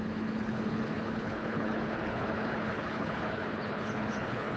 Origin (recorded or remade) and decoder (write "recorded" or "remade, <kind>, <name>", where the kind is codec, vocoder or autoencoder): remade, codec, HILCodec